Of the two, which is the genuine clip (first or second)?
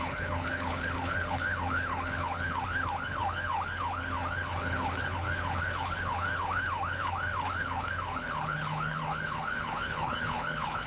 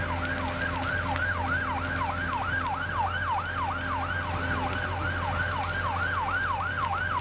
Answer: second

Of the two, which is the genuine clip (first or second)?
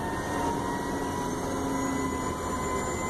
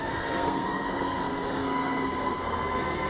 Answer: first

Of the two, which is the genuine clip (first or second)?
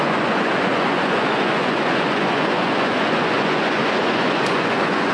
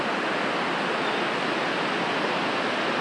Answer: second